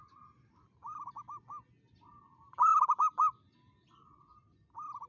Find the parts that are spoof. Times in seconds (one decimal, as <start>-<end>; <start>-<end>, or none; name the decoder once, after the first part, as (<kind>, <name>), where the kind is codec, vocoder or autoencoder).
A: none